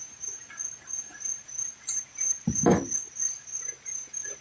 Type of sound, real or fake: real